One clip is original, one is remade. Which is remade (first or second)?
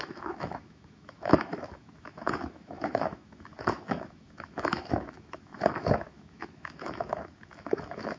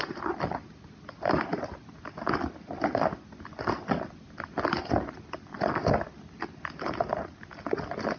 first